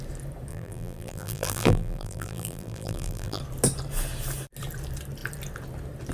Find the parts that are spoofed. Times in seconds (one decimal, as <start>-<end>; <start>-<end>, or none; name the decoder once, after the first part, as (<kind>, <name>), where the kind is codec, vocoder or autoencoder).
0.5-3.4 (vocoder, BigVGAN v2)